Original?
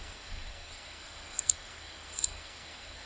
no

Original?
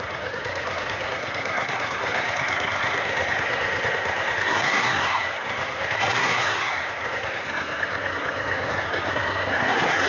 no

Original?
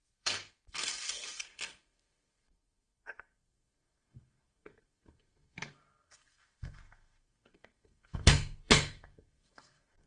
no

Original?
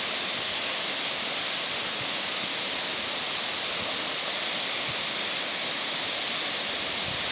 yes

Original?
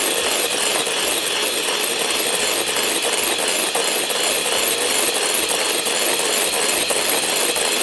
yes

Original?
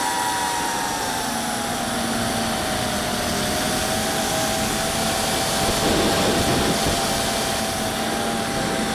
yes